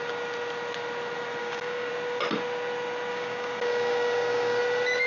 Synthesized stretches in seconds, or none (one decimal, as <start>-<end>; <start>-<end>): 1.4-1.9; 3.1-4.6